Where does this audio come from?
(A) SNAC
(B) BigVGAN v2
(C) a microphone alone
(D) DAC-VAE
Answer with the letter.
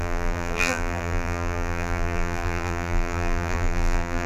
B